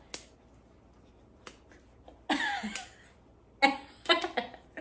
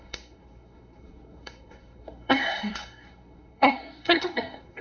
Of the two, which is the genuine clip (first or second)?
first